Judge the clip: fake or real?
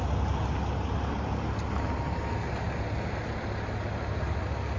real